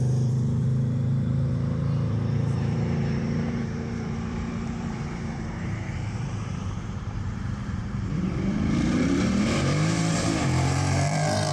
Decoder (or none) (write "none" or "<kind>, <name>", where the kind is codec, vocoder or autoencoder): vocoder, BigVGAN v2